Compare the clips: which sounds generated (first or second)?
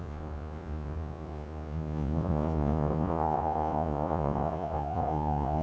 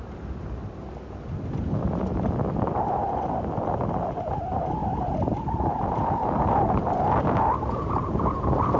first